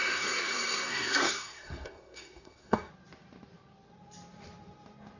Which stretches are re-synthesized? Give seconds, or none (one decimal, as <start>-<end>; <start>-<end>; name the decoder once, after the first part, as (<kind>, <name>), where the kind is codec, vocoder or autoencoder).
0.0-2.9 (codec, SNAC)

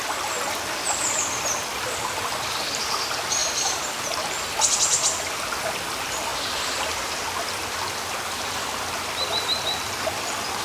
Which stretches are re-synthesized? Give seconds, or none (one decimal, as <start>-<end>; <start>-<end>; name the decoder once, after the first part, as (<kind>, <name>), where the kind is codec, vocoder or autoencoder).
none